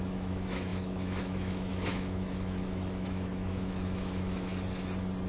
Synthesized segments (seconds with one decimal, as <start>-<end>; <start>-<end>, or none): 0.0-4.5